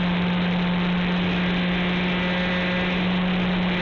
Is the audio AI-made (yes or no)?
no